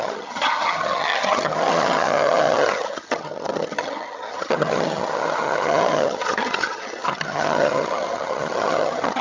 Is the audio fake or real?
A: fake